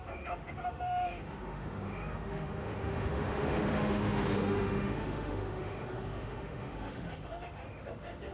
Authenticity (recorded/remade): remade